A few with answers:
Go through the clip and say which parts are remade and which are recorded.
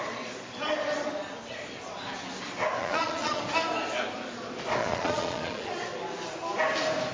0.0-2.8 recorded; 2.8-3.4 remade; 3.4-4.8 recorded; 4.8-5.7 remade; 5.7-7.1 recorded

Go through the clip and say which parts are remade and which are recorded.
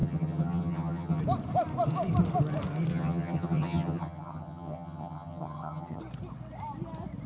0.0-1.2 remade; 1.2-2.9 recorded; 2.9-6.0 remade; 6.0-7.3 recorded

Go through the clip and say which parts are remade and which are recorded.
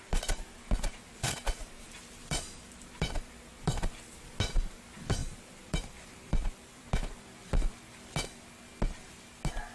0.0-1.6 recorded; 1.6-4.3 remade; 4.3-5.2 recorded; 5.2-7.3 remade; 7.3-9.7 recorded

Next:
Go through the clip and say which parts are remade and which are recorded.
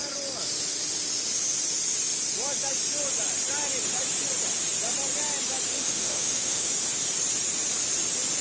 0.0-5.7 recorded; 5.7-6.7 remade; 6.7-8.4 recorded